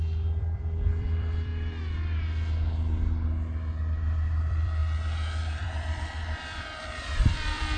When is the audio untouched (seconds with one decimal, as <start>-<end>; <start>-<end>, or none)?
1.5-3.8; 4.8-5.6